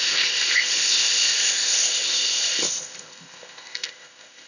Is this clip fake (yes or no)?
yes